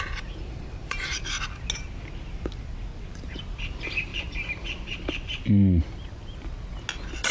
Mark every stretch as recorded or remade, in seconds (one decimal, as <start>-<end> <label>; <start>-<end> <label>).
0.0-0.8 recorded; 0.8-1.4 remade; 1.4-2.9 recorded; 2.9-3.4 remade; 3.4-4.1 recorded; 4.1-6.1 remade; 6.1-7.3 recorded